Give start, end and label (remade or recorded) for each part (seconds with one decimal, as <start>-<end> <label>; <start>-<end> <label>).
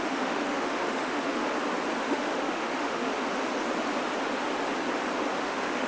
0.0-1.4 remade; 1.4-2.0 recorded; 2.0-3.1 remade; 3.1-5.4 recorded; 5.4-5.9 remade